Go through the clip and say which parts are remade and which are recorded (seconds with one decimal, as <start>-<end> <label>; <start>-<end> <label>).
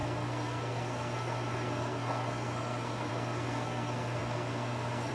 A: 0.0-5.1 remade